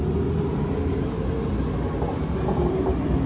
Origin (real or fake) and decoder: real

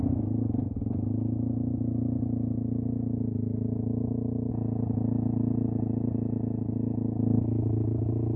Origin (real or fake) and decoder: real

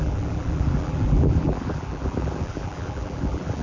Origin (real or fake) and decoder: fake, vocoder, BigVGAN v2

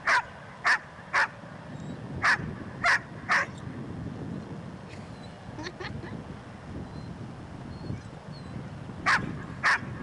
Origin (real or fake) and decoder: real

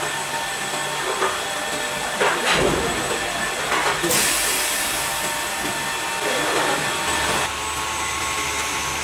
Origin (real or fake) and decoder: real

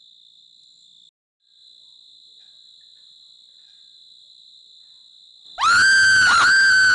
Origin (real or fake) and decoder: real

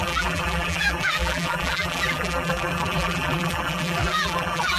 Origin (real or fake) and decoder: fake, vocoder, BigVGAN v2